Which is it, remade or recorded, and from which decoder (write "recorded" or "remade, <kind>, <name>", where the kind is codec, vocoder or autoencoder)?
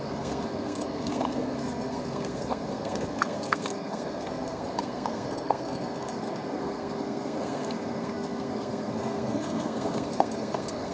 remade, codec, SNAC